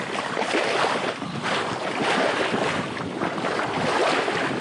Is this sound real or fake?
real